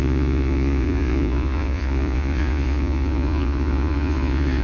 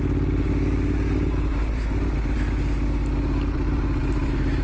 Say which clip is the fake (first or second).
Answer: first